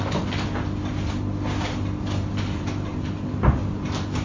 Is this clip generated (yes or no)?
no